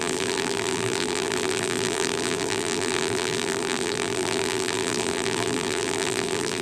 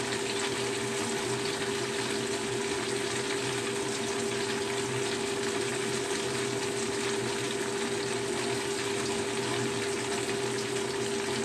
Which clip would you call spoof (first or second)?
first